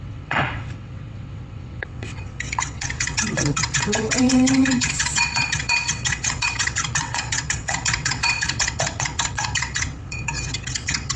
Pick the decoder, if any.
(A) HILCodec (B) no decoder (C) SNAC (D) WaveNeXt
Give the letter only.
D